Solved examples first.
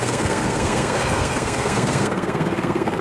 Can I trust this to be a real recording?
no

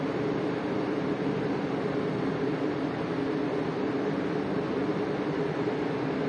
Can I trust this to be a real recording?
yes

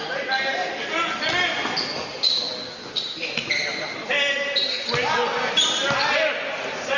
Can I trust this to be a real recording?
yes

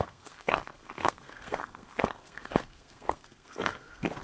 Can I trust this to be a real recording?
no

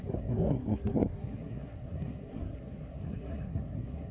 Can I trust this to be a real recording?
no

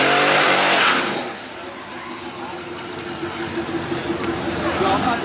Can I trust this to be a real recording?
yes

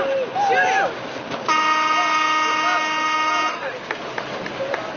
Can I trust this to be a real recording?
yes